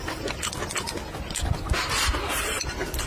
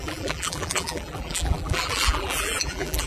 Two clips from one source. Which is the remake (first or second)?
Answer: second